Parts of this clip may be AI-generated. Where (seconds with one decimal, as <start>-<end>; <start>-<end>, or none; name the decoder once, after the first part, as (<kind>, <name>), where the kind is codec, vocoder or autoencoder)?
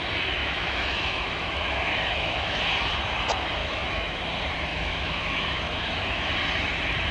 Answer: 0.4-2.6 (autoencoder, DAC-VAE); 3.6-4.2; 4.7-6.3